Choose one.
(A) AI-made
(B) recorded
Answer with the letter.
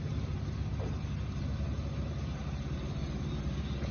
A